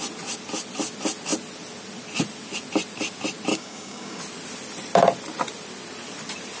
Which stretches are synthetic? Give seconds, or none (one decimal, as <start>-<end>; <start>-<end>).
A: 3.5-4.2